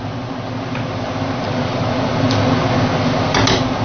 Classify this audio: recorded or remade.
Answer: recorded